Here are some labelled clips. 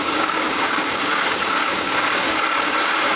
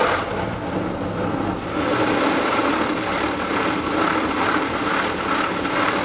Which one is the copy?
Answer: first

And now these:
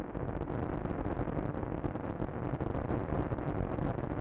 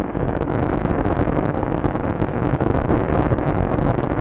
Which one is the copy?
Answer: second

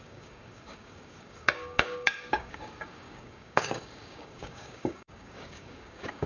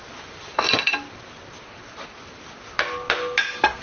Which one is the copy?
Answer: first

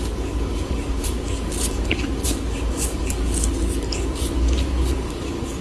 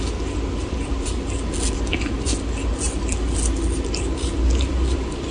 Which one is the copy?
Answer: first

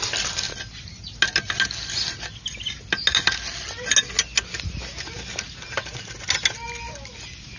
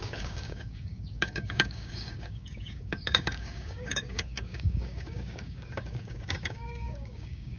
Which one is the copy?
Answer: second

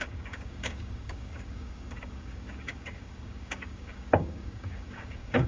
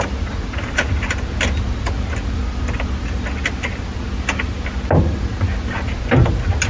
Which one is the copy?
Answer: first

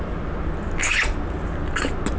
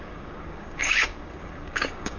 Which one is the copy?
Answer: second